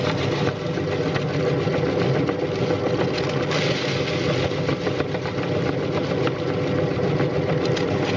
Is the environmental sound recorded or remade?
recorded